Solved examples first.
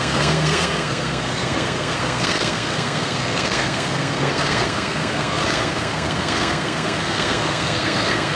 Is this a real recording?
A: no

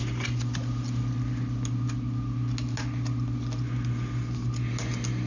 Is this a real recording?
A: yes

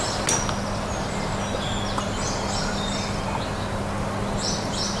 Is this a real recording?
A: yes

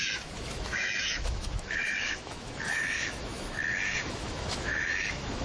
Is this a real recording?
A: no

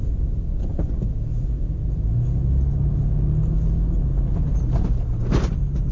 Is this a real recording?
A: yes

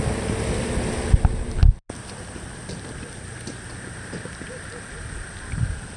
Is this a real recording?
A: yes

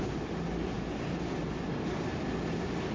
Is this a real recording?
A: no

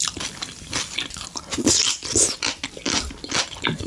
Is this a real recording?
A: yes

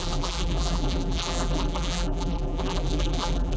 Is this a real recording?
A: no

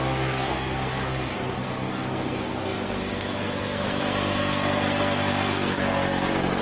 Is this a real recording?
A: no